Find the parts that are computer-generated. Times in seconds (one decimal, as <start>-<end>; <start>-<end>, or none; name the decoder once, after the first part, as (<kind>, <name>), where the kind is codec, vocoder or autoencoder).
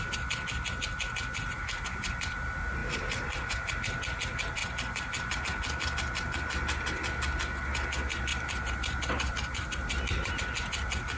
2.8-3.7 (vocoder, BigVGAN v2); 8.3-10.3